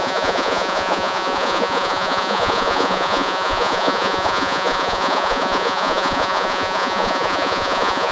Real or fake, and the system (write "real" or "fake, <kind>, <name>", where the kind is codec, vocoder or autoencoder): fake, vocoder, Vocos